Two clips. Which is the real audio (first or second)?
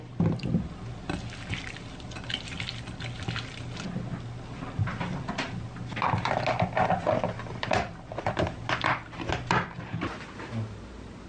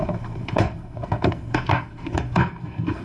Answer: first